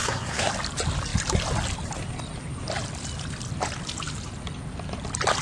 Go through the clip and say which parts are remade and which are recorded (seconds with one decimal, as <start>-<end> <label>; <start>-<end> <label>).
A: 0.0-0.5 remade; 0.5-5.4 recorded